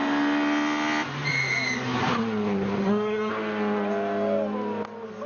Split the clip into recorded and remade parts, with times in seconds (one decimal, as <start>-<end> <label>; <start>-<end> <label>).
0.0-2.8 recorded; 2.8-3.3 remade; 3.3-5.3 recorded